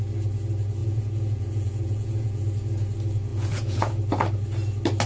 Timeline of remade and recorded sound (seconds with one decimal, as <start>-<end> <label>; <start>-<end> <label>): 0.0-0.8 recorded; 0.8-2.4 remade; 2.4-3.3 recorded; 3.3-3.9 remade; 3.9-5.1 recorded